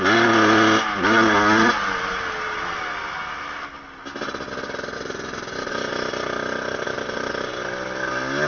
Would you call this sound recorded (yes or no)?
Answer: yes